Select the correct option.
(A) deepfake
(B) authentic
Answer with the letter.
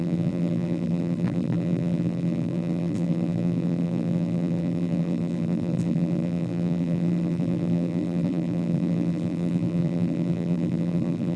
A